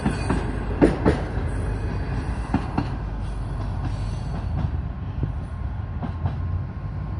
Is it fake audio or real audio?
real